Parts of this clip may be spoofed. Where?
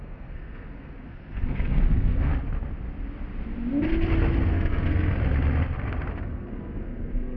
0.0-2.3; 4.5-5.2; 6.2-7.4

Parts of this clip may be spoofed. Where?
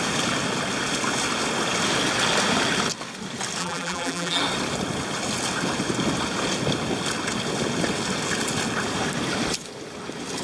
3.6-4.4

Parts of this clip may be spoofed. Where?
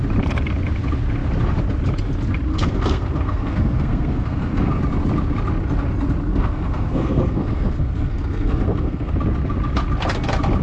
2.5-4.8; 6.3-9.1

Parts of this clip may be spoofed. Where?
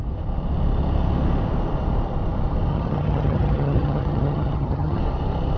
2.7-5.0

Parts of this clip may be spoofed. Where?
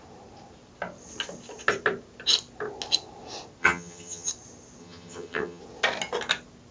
3.6-4.3; 4.8-5.6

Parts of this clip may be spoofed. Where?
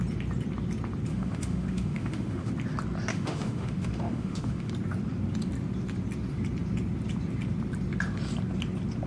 1.1-2.5; 3.1-4.7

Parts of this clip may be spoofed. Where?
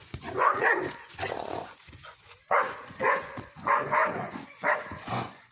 0.0-5.5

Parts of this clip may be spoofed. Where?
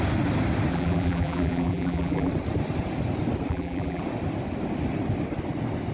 0.7-2.3; 3.5-4.0